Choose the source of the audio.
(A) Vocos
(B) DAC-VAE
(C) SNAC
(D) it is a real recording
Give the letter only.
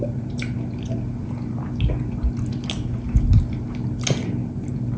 D